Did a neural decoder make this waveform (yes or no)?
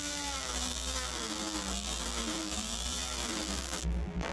yes